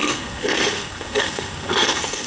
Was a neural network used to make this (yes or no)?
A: yes